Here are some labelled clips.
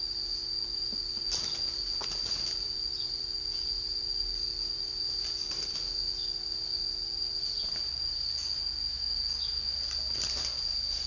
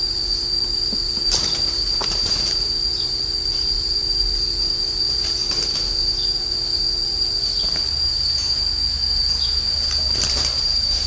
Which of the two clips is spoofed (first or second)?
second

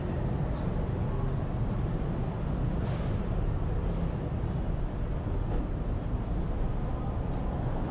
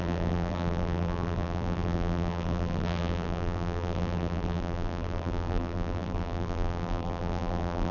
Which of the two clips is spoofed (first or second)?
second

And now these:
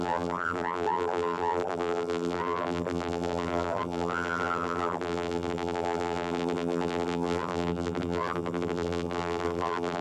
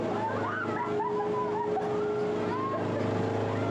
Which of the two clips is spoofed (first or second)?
first